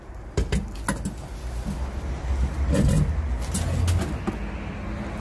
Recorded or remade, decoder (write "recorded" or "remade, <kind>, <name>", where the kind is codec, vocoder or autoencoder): recorded